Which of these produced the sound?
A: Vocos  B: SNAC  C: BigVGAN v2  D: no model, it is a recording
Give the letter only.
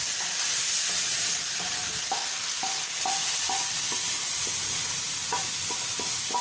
D